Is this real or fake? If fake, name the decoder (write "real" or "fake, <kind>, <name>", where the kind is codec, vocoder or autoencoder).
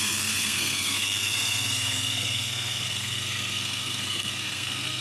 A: fake, codec, SNAC